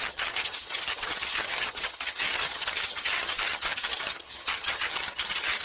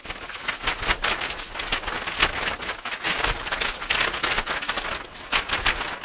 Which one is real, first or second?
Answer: second